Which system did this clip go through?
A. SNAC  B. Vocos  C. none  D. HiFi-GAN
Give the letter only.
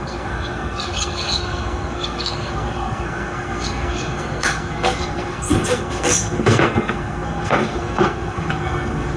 A